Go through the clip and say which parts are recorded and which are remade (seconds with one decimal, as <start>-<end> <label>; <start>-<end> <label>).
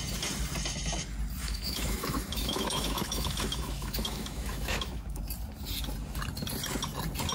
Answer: 0.0-1.4 recorded; 1.4-5.2 remade; 5.2-7.3 recorded